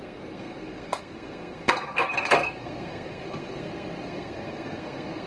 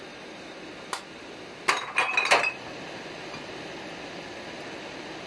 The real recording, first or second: second